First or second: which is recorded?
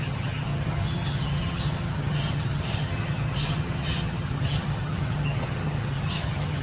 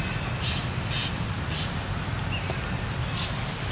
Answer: second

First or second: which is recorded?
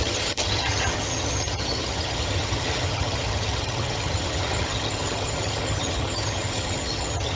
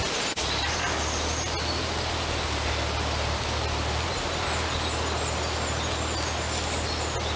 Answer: second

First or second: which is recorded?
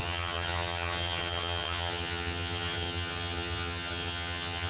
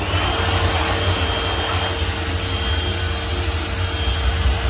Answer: second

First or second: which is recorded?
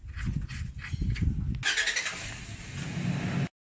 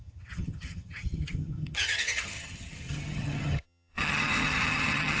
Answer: first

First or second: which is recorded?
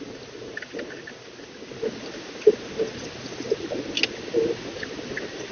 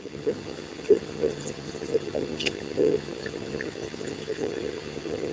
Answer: first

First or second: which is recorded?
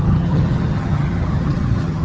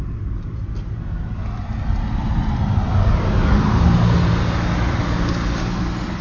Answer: second